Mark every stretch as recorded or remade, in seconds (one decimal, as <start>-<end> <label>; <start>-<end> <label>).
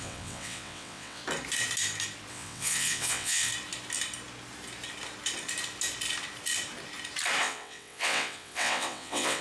0.0-1.2 remade; 1.2-2.3 recorded; 2.3-3.5 remade; 3.5-7.4 recorded; 7.4-9.4 remade